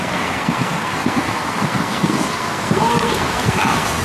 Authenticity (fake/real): fake